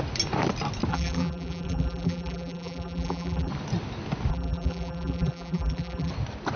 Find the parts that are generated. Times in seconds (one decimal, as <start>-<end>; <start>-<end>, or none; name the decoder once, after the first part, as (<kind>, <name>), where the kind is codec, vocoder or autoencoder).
0.9-3.5 (vocoder, BigVGAN v2); 4.3-6.1